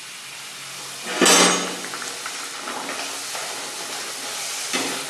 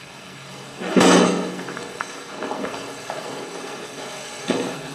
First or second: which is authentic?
first